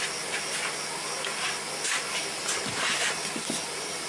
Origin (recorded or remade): recorded